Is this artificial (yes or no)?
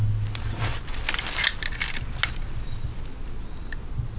no